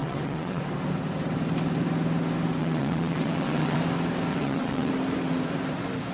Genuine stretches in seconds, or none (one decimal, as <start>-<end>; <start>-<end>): 0.6-2.6; 3.8-4.3; 4.9-6.1

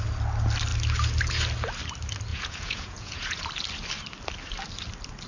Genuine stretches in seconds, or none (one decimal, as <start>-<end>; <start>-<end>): 0.0-2.3; 3.4-5.3

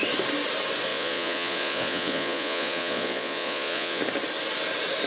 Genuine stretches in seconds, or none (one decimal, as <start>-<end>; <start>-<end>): 0.0-0.9; 4.0-5.1

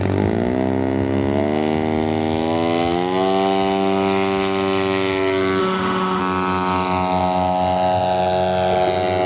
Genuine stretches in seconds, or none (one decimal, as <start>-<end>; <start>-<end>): 0.0-5.6; 6.2-9.3

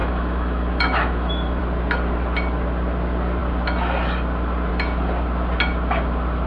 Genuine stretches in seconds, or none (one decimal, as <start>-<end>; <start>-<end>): 1.6-6.5

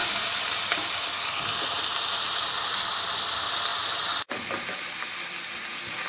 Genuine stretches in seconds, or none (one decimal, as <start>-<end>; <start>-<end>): 1.0-6.1

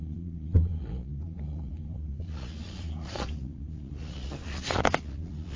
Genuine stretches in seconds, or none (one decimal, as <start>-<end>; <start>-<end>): none

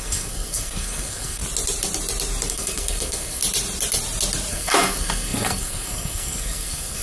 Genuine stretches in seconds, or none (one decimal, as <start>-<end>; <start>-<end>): 1.4-2.5; 3.4-4.5